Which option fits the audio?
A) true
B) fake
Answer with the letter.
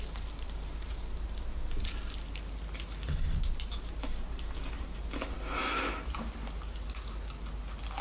A